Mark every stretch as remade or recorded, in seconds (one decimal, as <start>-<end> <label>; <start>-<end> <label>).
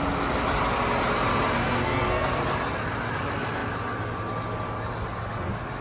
0.0-1.6 recorded; 1.6-2.4 remade; 2.4-5.8 recorded